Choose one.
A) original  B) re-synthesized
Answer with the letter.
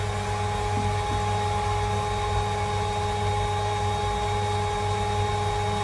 A